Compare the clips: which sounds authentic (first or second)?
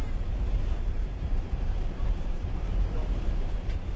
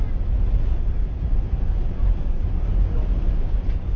second